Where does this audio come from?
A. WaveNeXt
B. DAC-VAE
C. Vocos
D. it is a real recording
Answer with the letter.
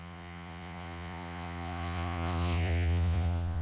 C